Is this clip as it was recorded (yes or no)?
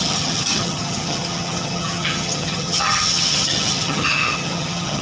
no